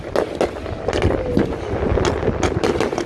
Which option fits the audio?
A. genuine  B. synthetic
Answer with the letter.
A